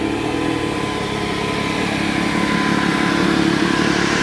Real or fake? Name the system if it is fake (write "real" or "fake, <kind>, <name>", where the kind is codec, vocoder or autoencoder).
real